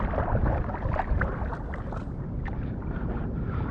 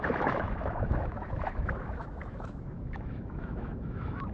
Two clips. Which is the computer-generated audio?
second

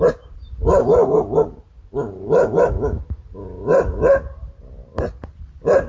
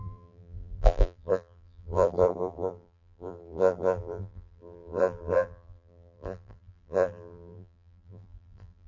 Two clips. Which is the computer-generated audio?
second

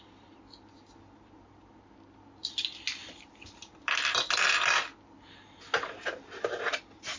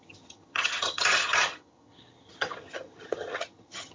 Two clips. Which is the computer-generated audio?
second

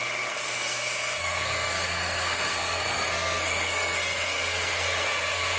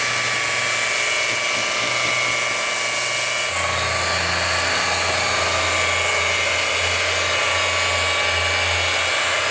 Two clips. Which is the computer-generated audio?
first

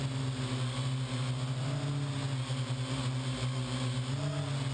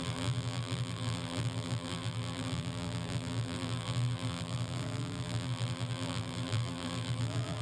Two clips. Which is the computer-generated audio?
second